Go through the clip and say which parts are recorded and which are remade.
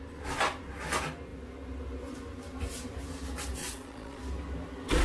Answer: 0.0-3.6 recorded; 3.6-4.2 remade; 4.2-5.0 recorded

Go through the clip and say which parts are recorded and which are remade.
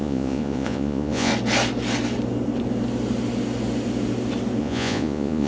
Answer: 0.0-1.3 remade; 1.3-4.6 recorded; 4.6-5.5 remade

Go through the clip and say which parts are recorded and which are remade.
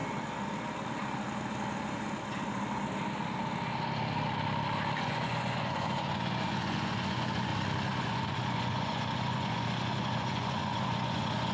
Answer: 0.0-5.0 recorded; 5.0-7.5 remade; 7.5-8.0 recorded; 8.0-11.5 remade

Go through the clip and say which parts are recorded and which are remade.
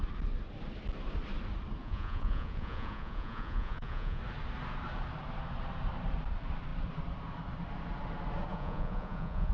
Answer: 0.0-1.8 recorded; 1.8-4.2 remade; 4.2-8.5 recorded; 8.5-9.5 remade